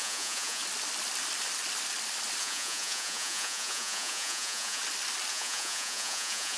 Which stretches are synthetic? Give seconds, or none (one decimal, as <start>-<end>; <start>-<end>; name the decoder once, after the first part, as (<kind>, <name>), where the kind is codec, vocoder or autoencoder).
0.0-0.6 (vocoder, Vocos); 2.4-4.8; 5.3-6.6